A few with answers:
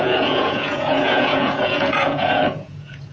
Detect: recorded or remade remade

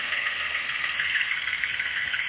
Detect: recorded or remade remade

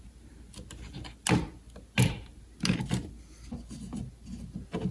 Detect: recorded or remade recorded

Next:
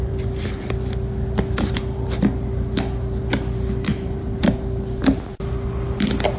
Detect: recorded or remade recorded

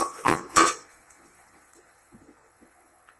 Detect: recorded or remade remade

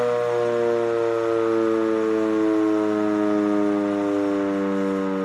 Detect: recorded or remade recorded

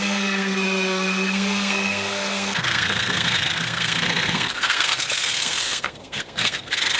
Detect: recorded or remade remade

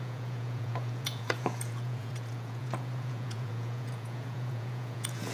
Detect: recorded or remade remade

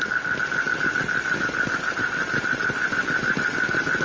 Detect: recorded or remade recorded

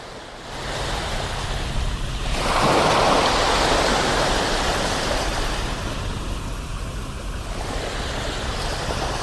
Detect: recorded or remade recorded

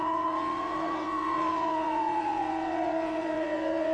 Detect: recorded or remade remade